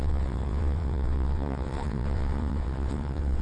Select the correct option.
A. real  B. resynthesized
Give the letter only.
B